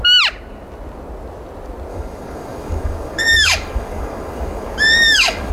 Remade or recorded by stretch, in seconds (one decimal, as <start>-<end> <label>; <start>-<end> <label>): 0.0-1.9 recorded; 1.9-5.5 remade